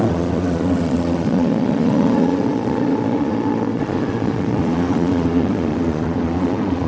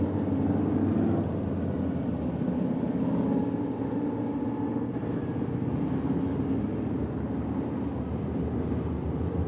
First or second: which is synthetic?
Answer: first